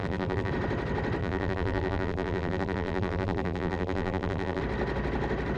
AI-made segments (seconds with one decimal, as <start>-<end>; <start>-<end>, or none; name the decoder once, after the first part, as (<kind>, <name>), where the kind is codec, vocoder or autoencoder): 0.0-0.5 (vocoder, BigVGAN v2); 1.2-4.6